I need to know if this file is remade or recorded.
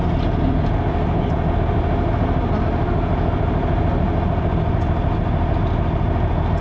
recorded